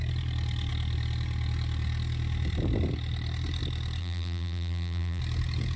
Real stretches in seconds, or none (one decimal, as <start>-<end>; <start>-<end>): 0.0-4.0; 5.2-5.8

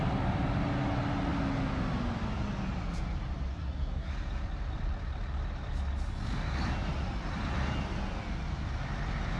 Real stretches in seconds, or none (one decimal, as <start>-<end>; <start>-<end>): 0.0-3.5; 4.1-9.4

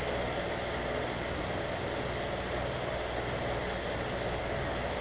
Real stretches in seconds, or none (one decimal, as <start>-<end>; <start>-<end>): 0.0-5.0

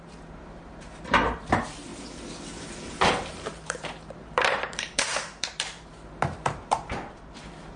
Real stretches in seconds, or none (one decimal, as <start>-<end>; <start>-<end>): 1.9-2.5

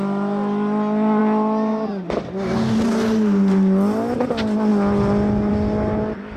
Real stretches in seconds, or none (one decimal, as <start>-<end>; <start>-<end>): 0.0-6.4

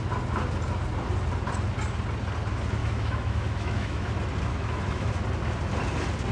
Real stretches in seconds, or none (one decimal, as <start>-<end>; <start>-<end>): 0.0-2.8; 4.1-4.5; 5.1-6.3